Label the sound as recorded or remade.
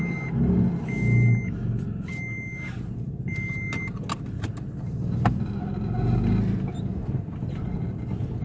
recorded